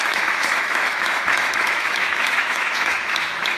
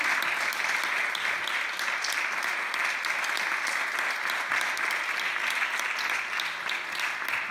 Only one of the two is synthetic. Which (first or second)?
first